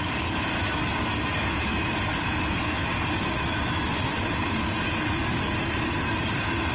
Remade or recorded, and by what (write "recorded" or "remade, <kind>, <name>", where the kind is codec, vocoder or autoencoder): recorded